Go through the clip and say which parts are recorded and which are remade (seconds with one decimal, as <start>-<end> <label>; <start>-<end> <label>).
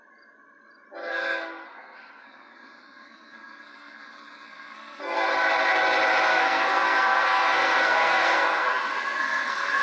0.0-1.0 recorded; 1.0-5.3 remade; 5.3-6.3 recorded; 6.3-9.8 remade